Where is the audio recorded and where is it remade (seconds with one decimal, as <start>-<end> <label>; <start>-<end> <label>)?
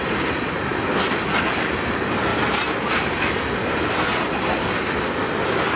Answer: 0.0-5.8 recorded